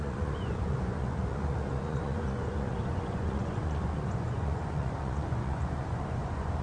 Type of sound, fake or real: fake